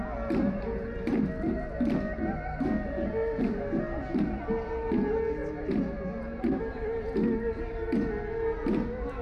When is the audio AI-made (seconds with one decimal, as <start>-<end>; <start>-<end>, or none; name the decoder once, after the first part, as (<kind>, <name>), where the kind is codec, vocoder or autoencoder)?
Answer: none